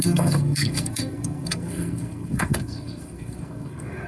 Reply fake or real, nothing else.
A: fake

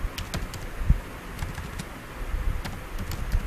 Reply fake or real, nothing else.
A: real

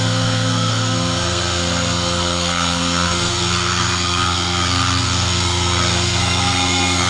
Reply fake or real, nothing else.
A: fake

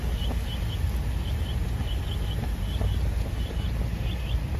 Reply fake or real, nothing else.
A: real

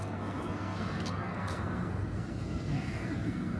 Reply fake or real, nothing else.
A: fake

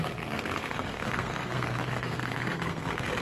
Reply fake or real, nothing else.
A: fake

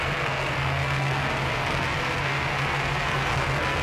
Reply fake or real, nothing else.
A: fake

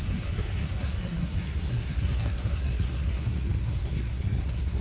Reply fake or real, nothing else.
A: fake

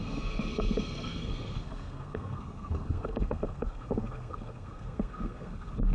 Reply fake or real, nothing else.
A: fake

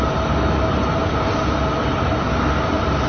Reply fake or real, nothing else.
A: real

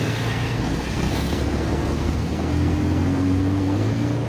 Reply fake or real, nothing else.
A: fake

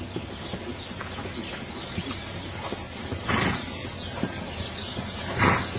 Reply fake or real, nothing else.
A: real